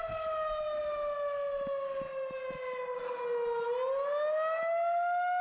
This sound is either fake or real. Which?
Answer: real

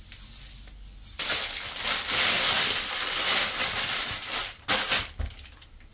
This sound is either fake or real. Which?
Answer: real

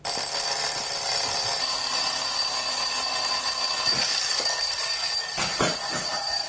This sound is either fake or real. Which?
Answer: real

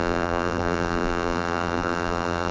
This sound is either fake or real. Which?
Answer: fake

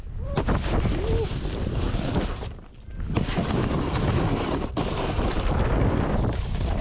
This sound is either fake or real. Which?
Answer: fake